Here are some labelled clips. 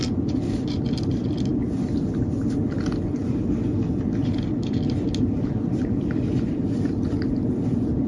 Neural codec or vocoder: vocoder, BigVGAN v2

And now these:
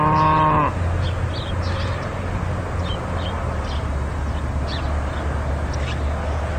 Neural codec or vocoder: none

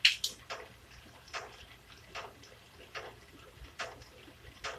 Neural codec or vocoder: none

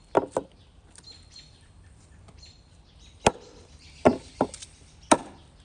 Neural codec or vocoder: vocoder, BigVGAN v2